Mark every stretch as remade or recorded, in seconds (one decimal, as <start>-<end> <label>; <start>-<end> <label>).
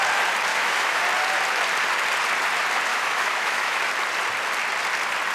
0.0-0.5 recorded; 0.5-1.0 remade; 1.0-2.9 recorded; 2.9-3.8 remade; 3.8-5.3 recorded